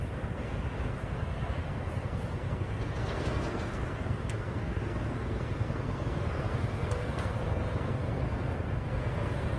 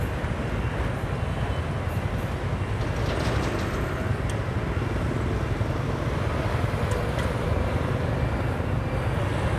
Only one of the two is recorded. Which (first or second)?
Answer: second